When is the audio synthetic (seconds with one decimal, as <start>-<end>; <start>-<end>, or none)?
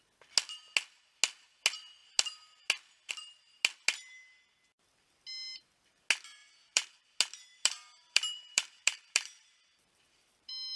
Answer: 6.4-6.9; 7.5-10.8